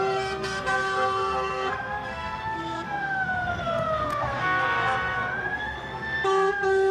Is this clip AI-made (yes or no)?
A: yes